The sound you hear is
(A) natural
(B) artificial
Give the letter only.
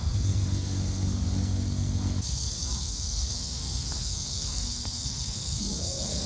B